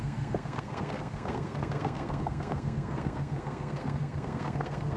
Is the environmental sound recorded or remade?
remade